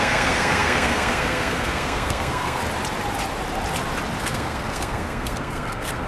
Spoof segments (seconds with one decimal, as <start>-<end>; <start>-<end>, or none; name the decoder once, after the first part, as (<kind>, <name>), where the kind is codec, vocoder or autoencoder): 0.0-2.6 (codec, SNAC); 4.2-6.1